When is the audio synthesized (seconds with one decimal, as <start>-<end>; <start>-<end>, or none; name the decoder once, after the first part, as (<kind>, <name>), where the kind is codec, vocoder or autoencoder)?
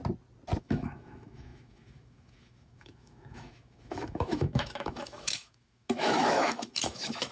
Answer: 0.6-7.3 (autoencoder, DAC-VAE)